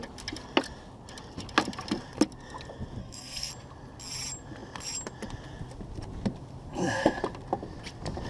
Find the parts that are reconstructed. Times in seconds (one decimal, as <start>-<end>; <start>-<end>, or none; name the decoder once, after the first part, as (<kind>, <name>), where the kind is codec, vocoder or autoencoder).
3.0-3.5 (codec, SNAC); 6.7-7.2

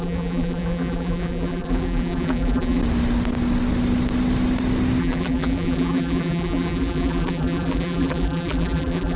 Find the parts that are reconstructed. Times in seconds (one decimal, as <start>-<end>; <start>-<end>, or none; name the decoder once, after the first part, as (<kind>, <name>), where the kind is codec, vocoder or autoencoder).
0.0-2.8 (vocoder, BigVGAN v2); 5.0-9.2

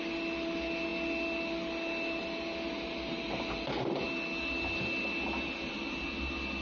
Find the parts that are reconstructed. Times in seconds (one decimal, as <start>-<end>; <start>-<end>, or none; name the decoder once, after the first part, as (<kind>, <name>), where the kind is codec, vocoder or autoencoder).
none

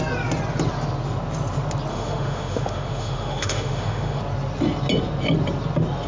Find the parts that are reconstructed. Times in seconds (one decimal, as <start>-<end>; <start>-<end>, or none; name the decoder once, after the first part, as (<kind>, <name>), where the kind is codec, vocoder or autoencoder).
1.9-4.2 (autoencoder, DAC-VAE)

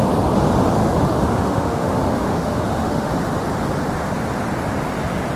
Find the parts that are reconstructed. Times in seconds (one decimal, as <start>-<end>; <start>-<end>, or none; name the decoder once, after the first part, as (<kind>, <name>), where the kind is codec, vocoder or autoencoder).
0.8-3.1 (autoencoder, DAC-VAE)

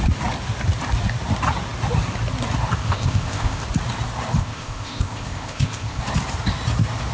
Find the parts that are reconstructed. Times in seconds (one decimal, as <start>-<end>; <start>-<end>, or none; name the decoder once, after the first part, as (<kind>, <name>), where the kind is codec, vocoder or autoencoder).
2.8-3.6 (codec, ZipCodec); 4.4-6.0

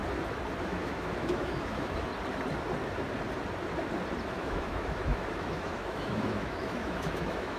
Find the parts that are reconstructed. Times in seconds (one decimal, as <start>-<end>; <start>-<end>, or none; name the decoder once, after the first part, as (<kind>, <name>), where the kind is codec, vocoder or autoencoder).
0.6-2.1 (autoencoder, DAC-VAE); 4.3-7.6